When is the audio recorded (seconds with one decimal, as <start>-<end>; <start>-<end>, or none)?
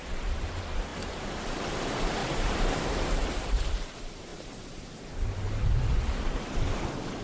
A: 0.0-2.2; 3.6-7.2